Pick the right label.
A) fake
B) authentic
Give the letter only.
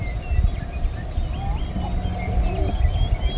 B